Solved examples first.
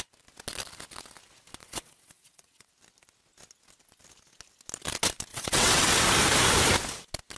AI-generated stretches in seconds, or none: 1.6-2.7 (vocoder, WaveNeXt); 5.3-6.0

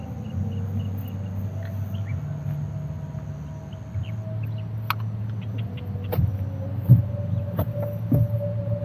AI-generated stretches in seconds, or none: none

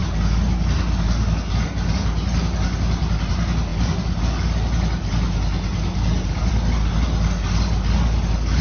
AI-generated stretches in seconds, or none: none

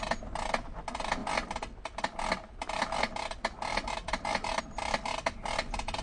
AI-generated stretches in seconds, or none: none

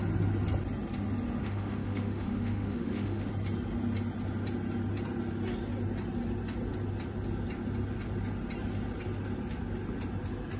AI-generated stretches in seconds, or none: 1.4-3.3 (autoencoder, DAC-VAE)